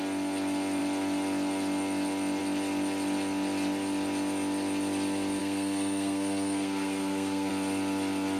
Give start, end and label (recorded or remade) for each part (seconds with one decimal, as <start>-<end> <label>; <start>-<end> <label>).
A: 0.0-5.4 recorded; 5.4-7.5 remade; 7.5-8.4 recorded